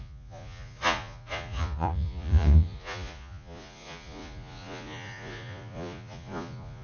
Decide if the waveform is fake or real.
fake